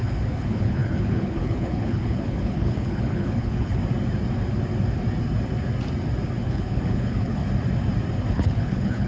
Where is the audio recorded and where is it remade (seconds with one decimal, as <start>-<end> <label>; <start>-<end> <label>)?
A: 0.0-3.8 remade; 3.8-6.4 recorded; 6.4-7.4 remade; 7.4-8.3 recorded; 8.3-9.1 remade